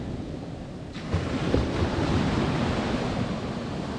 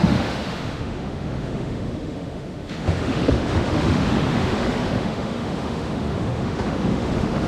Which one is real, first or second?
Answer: first